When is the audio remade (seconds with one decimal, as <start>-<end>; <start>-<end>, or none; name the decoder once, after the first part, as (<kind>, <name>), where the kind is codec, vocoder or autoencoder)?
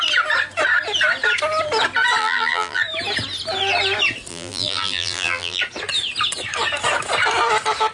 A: 2.2-2.8 (vocoder, BigVGAN v2); 4.3-5.6